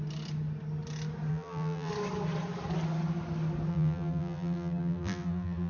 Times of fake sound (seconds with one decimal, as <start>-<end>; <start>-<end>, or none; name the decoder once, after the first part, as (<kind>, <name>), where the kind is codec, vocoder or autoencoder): 1.3-1.9 (vocoder, BigVGAN v2); 3.7-5.7